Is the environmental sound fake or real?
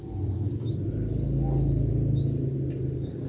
real